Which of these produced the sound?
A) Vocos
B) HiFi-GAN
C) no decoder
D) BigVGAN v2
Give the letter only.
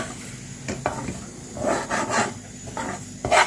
C